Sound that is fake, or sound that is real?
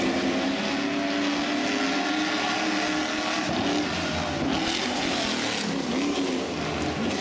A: real